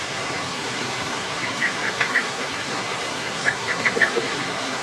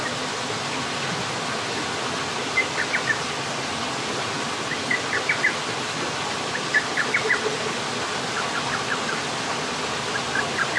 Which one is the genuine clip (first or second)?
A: second